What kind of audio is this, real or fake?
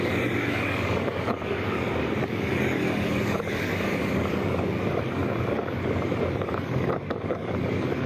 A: fake